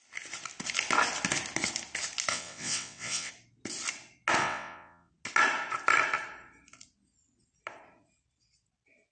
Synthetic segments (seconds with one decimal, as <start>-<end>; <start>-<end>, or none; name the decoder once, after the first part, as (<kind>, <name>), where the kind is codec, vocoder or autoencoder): 2.3-3.3 (vocoder, WaveNeXt); 4.4-5.1

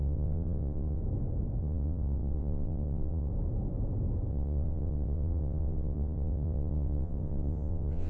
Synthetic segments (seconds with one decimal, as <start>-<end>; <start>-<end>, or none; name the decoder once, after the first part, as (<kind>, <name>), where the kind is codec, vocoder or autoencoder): 0.0-1.0 (vocoder, WaveNeXt); 1.6-3.3; 4.3-8.1

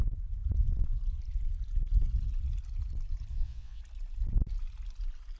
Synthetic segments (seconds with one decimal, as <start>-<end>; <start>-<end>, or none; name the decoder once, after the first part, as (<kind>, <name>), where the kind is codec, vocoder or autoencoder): 3.3-3.8 (vocoder, WaveNeXt)

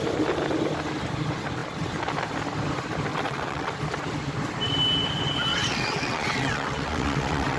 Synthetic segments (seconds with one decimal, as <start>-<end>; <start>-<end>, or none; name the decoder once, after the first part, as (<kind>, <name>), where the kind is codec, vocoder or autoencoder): 3.1-3.7 (vocoder, WaveNeXt); 5.5-7.6

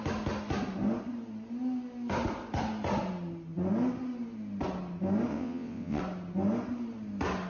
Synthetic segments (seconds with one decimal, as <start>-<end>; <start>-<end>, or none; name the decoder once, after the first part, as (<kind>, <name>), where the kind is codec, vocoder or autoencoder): 5.3-6.0 (vocoder, WaveNeXt)

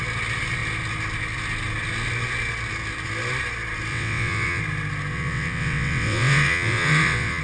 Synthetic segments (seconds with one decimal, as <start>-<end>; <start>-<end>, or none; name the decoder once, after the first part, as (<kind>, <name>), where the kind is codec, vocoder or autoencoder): 3.9-4.6 (vocoder, WaveNeXt); 5.1-7.4

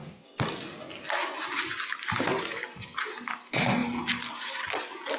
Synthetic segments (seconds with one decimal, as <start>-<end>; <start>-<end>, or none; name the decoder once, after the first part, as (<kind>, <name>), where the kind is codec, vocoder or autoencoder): none

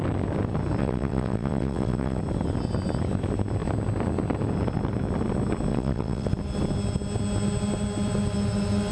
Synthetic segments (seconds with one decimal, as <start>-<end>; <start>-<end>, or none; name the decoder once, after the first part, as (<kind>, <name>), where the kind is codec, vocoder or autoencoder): 0.8-2.2 (vocoder, WaveNeXt); 5.7-6.3